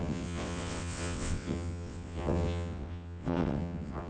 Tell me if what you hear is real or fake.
fake